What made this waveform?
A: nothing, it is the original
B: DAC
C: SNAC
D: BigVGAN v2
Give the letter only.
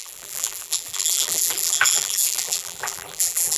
D